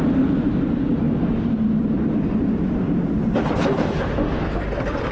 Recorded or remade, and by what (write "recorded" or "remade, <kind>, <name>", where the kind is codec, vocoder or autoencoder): recorded